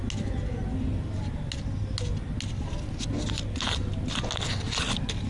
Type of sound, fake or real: real